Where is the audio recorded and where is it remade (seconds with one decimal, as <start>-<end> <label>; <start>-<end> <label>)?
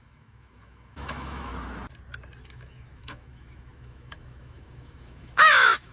0.0-1.5 remade; 1.5-2.4 recorded; 2.4-5.9 remade